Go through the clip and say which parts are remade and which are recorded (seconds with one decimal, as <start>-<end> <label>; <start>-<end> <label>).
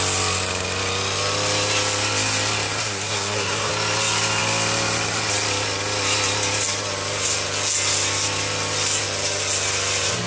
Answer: 0.0-2.8 recorded; 2.8-3.7 remade; 3.7-10.3 recorded